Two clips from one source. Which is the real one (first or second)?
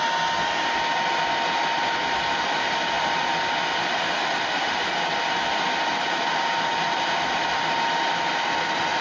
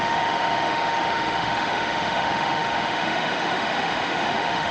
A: first